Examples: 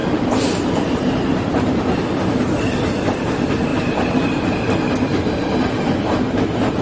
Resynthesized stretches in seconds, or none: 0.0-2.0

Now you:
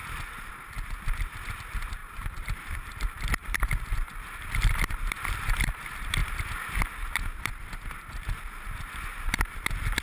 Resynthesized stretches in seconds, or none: 2.0-5.7

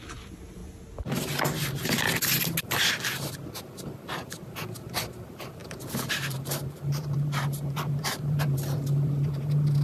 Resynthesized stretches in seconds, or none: 0.0-0.6; 3.6-5.6; 6.1-9.8

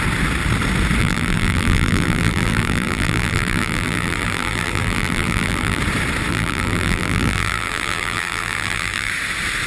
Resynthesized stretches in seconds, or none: 1.0-5.8; 6.3-9.1

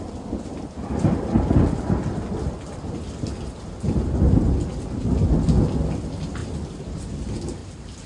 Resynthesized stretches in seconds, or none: 6.4-7.1; 7.6-8.1

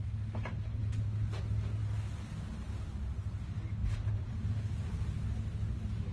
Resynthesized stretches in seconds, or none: 3.8-4.5

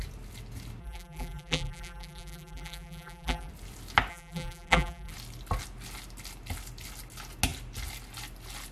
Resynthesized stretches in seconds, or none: 0.8-3.5; 4.1-5.1